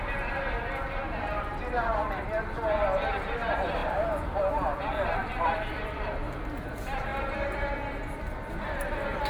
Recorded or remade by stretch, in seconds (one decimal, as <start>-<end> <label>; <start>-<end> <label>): 0.0-5.2 recorded; 5.2-6.3 remade; 6.3-9.3 recorded